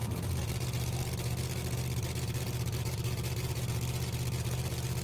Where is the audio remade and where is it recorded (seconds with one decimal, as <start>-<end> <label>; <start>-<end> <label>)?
0.0-5.0 recorded